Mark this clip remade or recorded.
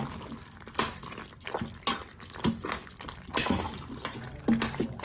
recorded